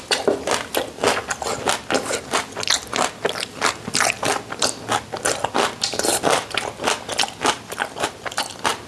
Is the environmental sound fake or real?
real